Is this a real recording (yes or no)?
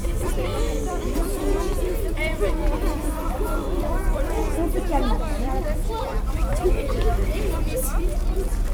no